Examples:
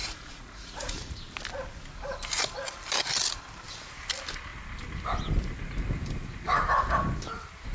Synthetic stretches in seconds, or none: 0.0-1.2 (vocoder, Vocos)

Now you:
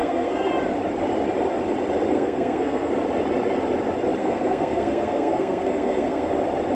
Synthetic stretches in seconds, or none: 0.0-0.5 (codec, SNAC); 2.1-2.9; 4.2-6.3

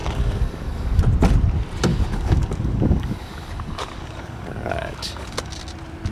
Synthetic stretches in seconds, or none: 0.0-1.0 (codec, DAC); 1.9-5.6

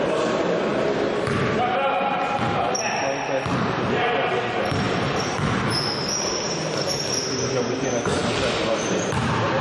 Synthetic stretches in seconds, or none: none